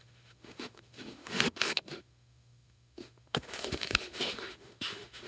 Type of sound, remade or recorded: remade